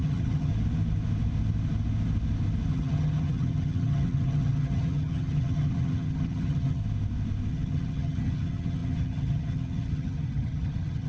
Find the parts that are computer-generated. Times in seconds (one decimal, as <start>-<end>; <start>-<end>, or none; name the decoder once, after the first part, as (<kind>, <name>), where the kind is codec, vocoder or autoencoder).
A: 0.0-0.5 (vocoder, HiFi-GAN); 2.7-6.8; 7.5-11.1